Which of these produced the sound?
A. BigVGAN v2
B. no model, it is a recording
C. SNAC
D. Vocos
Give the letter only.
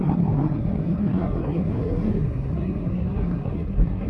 C